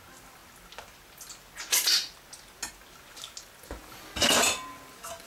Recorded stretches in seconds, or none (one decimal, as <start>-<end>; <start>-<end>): 0.0-5.3